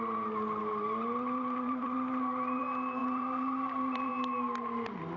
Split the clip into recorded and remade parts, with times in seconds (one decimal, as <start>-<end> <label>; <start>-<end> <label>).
0.0-0.6 recorded; 0.6-2.6 remade; 2.6-3.0 recorded; 3.0-4.1 remade; 4.1-5.2 recorded